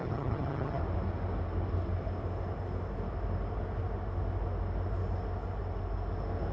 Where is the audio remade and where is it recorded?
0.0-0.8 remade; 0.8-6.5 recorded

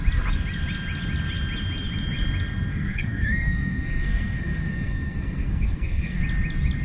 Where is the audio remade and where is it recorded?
0.0-2.7 recorded; 2.7-6.2 remade; 6.2-6.8 recorded

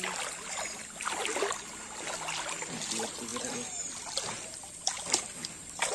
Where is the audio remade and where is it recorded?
0.0-5.9 recorded

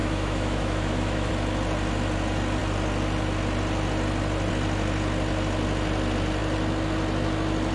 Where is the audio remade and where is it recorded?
0.0-1.3 remade; 1.3-7.7 recorded

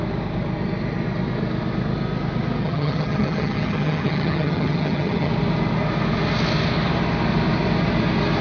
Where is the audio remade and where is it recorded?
0.0-2.6 recorded; 2.6-5.3 remade; 5.3-8.4 recorded

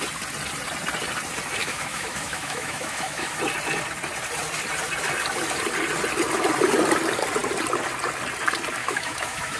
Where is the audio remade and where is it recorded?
0.0-1.6 recorded; 1.6-3.4 remade; 3.4-8.8 recorded; 8.8-9.6 remade

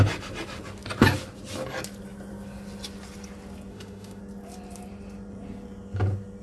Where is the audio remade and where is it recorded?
0.0-3.7 recorded; 3.7-4.2 remade; 4.2-6.4 recorded

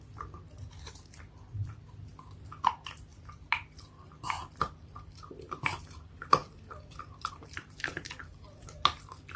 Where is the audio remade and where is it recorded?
0.0-3.1 recorded; 3.1-5.2 remade; 5.2-6.4 recorded; 6.4-7.0 remade; 7.0-9.4 recorded